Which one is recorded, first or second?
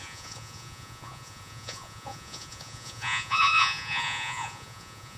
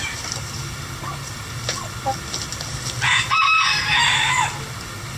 second